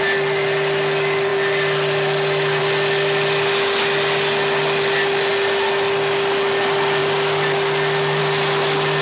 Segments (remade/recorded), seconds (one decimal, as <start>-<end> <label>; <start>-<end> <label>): 0.0-9.0 recorded